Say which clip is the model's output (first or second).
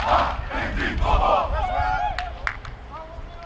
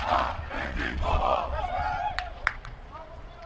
second